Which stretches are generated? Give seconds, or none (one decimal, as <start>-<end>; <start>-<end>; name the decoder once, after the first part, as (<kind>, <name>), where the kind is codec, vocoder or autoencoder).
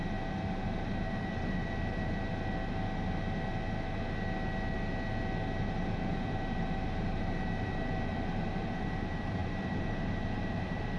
0.0-2.3 (vocoder, BigVGAN v2); 5.8-11.0